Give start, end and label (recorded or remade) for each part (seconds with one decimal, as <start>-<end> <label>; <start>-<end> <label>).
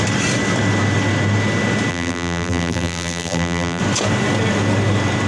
0.0-1.9 recorded; 1.9-3.8 remade; 3.8-5.3 recorded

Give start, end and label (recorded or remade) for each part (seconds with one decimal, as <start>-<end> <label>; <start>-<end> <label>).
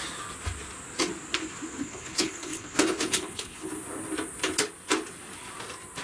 0.0-1.8 recorded; 1.8-3.7 remade; 3.7-6.0 recorded